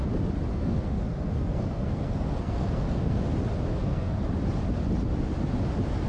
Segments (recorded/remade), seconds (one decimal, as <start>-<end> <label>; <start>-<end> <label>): 0.0-0.5 recorded; 0.5-3.2 remade; 3.2-3.7 recorded; 3.7-4.2 remade; 4.2-6.1 recorded